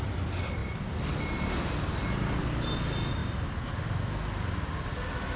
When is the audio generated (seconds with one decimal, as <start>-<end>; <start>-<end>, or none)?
none